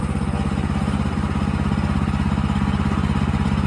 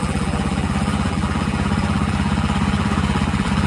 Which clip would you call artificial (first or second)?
second